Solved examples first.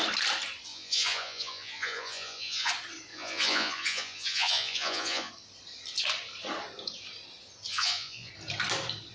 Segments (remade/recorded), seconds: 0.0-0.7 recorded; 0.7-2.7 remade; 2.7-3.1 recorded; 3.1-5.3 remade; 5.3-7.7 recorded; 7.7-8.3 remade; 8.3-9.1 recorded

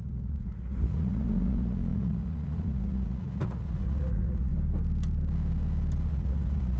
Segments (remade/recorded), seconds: 0.0-4.5 remade; 4.5-6.1 recorded; 6.1-6.8 remade

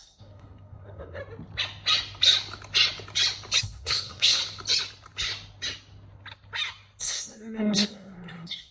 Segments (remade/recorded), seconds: 0.0-1.2 remade; 1.2-3.6 recorded; 3.6-4.4 remade; 4.4-7.0 recorded; 7.0-8.7 remade

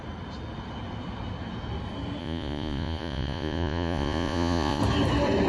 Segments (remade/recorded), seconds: 0.0-2.2 recorded; 2.2-4.8 remade; 4.8-5.5 recorded

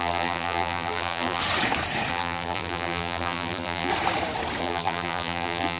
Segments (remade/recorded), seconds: 0.0-1.4 remade; 1.4-2.1 recorded; 2.1-3.9 remade; 3.9-4.6 recorded; 4.6-5.8 remade

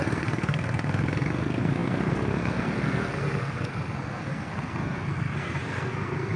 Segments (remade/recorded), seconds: 0.0-6.4 remade

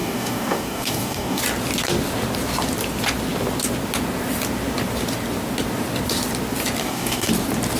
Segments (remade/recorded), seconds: 0.0-1.4 remade; 1.4-6.8 recorded; 6.8-7.3 remade; 7.3-7.8 recorded

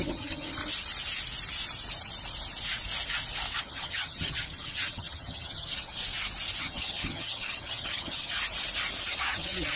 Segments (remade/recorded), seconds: 0.0-0.6 remade; 0.6-3.6 recorded; 3.6-6.0 remade; 6.0-6.6 recorded; 6.6-8.3 remade; 8.3-9.1 recorded; 9.1-9.8 remade